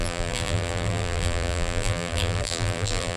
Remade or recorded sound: remade